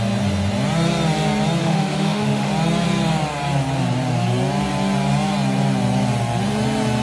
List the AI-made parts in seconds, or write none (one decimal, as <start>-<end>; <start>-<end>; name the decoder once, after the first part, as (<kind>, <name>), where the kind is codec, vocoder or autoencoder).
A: 1.6-2.5 (autoencoder, DAC-VAE)